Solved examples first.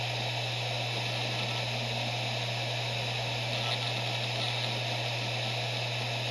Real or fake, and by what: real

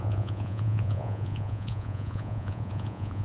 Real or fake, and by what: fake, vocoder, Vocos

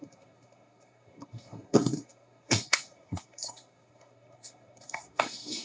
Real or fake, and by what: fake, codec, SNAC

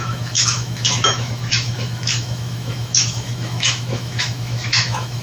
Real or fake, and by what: fake, autoencoder, DAC-VAE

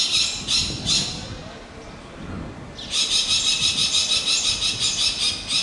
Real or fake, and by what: real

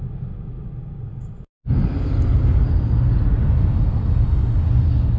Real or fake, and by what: real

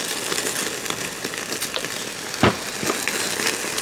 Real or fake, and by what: real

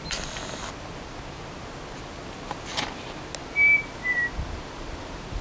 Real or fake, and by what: real